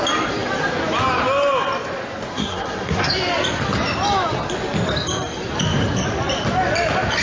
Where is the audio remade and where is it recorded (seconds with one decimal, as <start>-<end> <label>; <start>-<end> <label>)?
0.0-2.3 recorded; 2.3-3.1 remade; 3.1-7.2 recorded